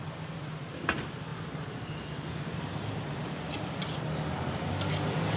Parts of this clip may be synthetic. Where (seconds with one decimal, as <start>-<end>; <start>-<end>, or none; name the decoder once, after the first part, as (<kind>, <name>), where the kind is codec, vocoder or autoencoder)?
none